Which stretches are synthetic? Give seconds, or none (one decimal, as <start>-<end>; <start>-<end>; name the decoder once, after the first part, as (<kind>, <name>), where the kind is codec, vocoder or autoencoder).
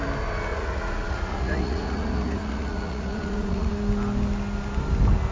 0.5-3.7 (vocoder, Vocos)